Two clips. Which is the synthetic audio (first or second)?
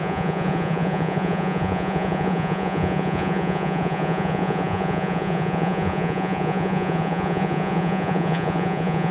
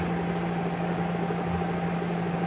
first